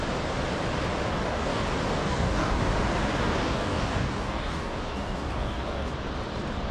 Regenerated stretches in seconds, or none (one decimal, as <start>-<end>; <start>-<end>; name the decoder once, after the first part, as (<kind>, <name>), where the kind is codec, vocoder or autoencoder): 1.1-1.6 (codec, DAC); 2.0-2.6; 3.1-5.9